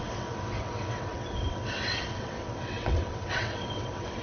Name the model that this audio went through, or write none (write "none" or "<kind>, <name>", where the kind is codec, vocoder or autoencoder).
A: vocoder, WaveNeXt